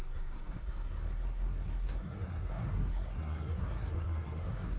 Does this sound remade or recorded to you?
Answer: remade